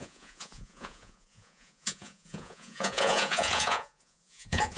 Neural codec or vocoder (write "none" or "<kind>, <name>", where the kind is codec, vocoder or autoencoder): vocoder, Vocos